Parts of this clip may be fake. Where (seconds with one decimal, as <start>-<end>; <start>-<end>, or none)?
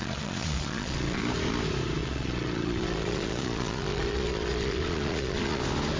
0.0-1.2; 2.0-5.6